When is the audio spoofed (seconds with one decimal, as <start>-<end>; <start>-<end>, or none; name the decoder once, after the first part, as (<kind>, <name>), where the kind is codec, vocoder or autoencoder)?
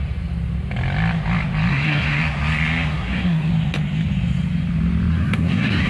1.7-2.2 (codec, SNAC); 2.9-3.5; 5.1-5.9